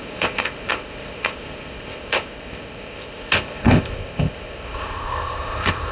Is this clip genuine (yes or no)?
no